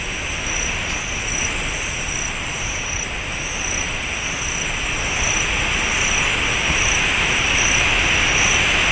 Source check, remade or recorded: recorded